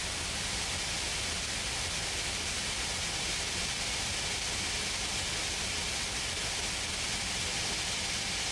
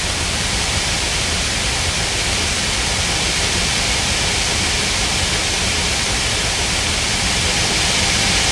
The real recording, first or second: first